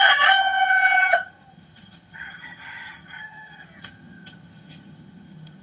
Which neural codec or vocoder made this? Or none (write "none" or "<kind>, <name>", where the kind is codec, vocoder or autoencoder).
vocoder, HiFi-GAN